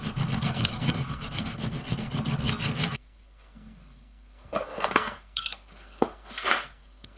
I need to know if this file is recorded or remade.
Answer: remade